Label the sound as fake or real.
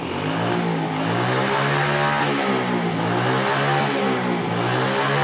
real